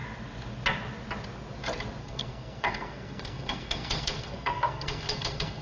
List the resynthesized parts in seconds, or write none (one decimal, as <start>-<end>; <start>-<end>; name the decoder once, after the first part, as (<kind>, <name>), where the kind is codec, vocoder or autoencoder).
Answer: 2.0-5.6 (codec, SNAC)